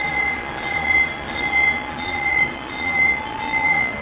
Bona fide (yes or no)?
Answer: no